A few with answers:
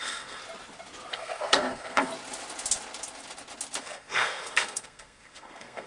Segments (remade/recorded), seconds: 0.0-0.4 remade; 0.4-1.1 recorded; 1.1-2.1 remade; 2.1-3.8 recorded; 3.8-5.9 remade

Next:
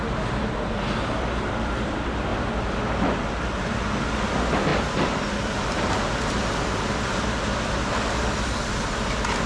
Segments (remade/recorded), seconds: 0.0-9.5 recorded

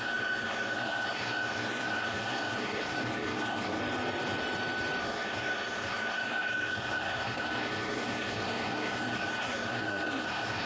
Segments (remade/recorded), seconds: 0.0-3.8 remade; 3.8-5.0 recorded; 5.0-10.7 remade

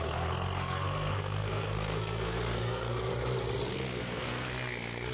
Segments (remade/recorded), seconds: 0.0-3.1 remade; 3.1-3.7 recorded; 3.7-5.1 remade

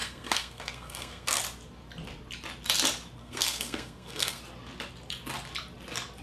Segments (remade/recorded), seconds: 0.0-1.4 remade; 1.4-3.2 recorded; 3.2-4.4 remade; 4.4-6.2 recorded